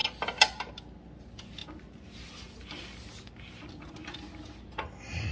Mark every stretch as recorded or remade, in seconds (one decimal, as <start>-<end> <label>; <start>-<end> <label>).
0.0-5.3 recorded